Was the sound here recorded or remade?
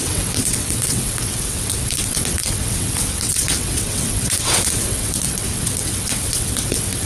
remade